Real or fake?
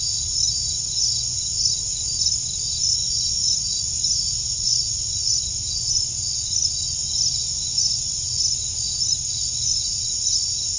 real